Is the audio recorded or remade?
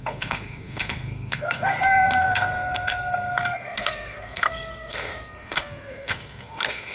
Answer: remade